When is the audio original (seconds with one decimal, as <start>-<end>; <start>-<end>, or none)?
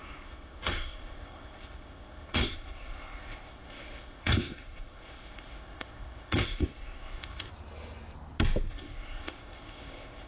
7.5-8.7